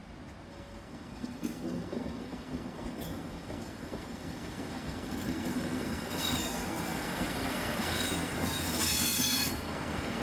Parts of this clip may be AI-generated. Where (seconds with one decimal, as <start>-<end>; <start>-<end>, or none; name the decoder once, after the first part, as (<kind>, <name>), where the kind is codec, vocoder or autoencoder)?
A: 0.5-10.2 (codec, SNAC)